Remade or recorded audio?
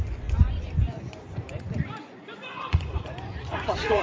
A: remade